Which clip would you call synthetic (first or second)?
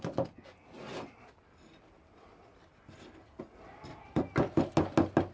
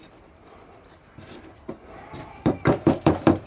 second